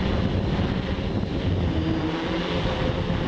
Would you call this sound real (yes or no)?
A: yes